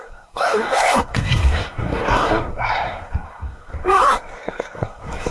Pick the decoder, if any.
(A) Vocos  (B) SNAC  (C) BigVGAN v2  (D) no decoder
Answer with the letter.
B